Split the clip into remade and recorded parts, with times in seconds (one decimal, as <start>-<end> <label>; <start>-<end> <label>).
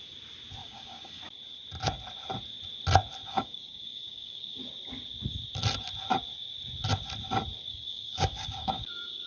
0.0-0.6 recorded; 0.6-1.2 remade; 1.2-3.2 recorded; 3.2-4.6 remade; 4.6-7.7 recorded; 7.7-9.3 remade